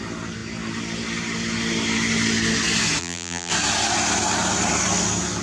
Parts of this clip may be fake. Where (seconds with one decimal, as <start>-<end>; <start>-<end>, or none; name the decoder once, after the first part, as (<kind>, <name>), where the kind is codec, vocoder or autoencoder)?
3.0-3.5 (vocoder, BigVGAN v2)